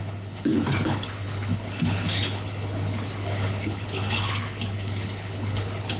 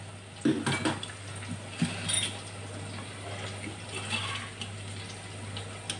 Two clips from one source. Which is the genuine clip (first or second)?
second